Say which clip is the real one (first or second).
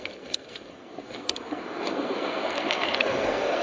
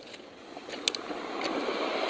second